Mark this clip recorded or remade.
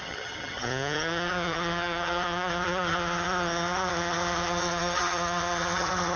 remade